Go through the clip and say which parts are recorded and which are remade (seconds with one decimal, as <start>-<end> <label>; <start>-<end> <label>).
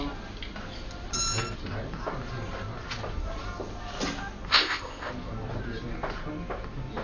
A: 0.0-4.5 recorded; 4.5-5.1 remade; 5.1-7.0 recorded